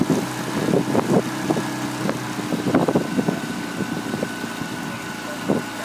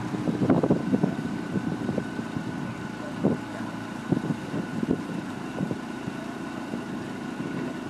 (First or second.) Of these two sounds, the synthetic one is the second